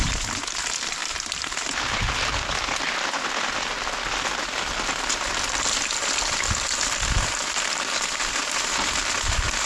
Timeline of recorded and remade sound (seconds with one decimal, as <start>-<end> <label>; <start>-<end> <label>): 0.0-9.7 recorded